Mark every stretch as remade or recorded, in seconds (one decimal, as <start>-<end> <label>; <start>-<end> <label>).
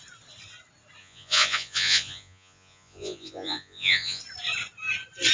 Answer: 0.0-1.0 recorded; 1.0-4.2 remade; 4.2-5.3 recorded